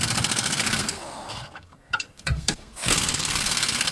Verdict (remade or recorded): remade